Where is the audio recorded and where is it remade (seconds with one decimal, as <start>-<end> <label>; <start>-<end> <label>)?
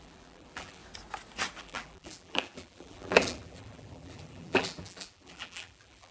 0.0-0.8 remade; 0.8-1.6 recorded; 1.6-6.1 remade